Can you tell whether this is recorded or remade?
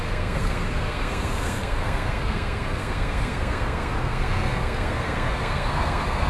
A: remade